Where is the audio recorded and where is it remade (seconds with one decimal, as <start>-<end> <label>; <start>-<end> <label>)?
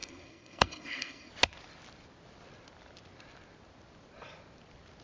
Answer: 0.0-1.3 remade; 1.3-5.0 recorded